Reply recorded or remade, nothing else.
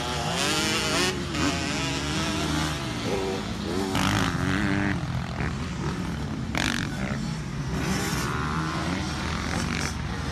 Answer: recorded